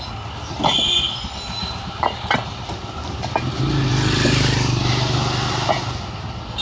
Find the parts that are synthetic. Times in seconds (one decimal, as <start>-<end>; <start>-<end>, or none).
1.6-2.3